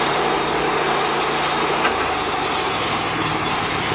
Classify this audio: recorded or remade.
remade